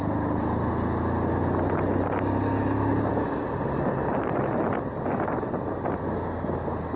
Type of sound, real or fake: real